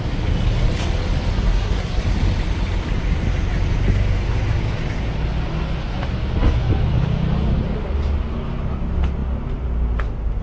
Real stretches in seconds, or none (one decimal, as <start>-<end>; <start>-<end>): 0.0-1.3; 2.0-10.4